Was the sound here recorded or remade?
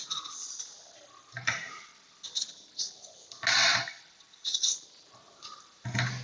recorded